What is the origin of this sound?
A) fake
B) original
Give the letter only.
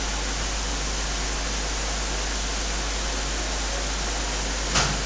B